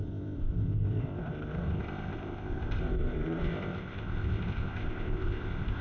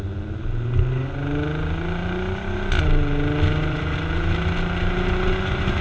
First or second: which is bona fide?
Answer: second